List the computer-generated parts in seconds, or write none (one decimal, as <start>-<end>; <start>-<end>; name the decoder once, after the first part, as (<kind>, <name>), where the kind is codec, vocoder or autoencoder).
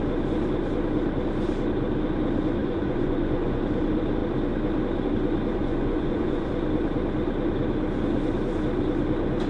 2.6-3.6 (vocoder, Vocos); 5.6-6.5